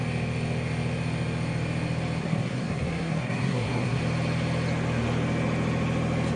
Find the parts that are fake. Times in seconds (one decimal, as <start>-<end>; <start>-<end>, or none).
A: 2.2-4.0